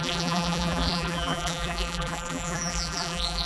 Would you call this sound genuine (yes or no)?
no